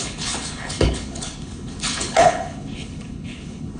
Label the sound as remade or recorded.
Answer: remade